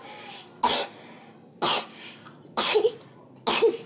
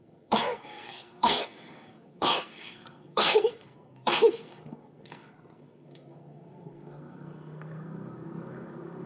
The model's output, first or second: second